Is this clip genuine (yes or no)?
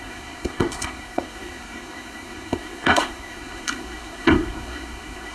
no